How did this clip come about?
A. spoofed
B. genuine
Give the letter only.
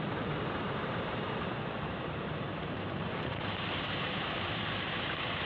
A